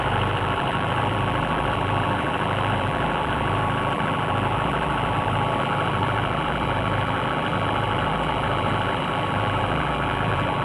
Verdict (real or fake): fake